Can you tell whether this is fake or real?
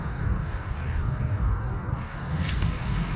fake